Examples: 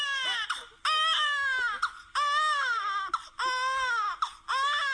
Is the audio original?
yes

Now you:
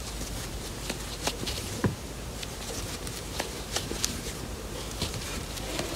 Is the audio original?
no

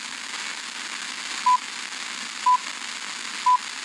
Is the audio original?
yes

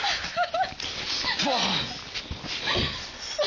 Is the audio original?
yes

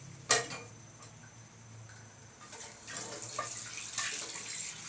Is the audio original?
yes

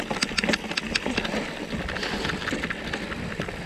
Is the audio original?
yes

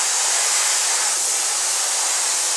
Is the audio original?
yes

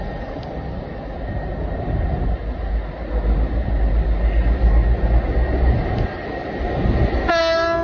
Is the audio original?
yes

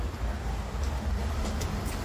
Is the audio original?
no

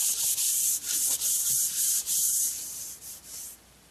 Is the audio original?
no